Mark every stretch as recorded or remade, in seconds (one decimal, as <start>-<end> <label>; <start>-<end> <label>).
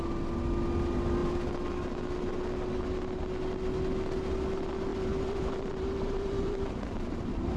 0.0-4.9 recorded; 4.9-7.6 remade